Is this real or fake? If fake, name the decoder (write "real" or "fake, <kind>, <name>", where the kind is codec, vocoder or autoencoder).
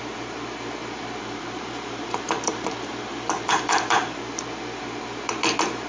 fake, vocoder, BigVGAN v2